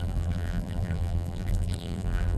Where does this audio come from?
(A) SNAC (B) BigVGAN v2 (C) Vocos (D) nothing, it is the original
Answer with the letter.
B